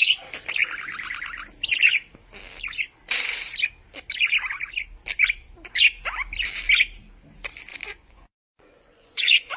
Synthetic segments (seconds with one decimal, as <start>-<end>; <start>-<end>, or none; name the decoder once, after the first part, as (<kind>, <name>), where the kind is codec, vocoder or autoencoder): 7.7-9.6 (vocoder, Vocos)